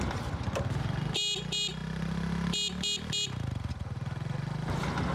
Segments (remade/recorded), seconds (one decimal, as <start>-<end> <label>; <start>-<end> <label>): 0.0-5.1 recorded